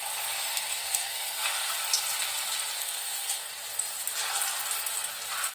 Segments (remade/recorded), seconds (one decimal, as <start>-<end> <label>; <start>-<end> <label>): 0.0-0.4 recorded; 0.4-1.7 remade; 1.7-2.8 recorded; 2.8-3.5 remade; 3.5-5.5 recorded